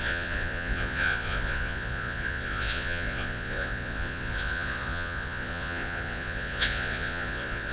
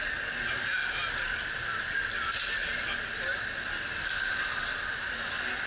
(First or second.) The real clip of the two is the second